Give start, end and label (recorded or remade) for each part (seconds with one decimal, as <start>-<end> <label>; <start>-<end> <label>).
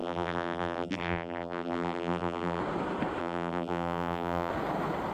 0.0-2.6 remade; 2.6-3.2 recorded; 3.2-4.5 remade; 4.5-5.1 recorded